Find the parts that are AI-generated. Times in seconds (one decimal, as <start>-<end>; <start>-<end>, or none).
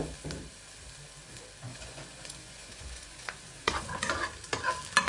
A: 1.7-4.1